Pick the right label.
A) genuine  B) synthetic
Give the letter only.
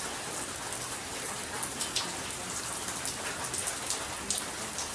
A